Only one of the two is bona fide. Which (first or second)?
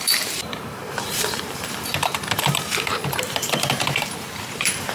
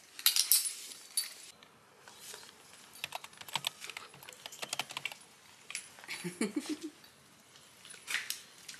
second